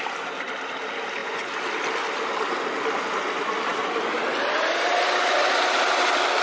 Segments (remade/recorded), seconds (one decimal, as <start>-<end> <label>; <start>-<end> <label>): 0.0-1.2 recorded; 1.2-1.7 remade; 1.7-6.4 recorded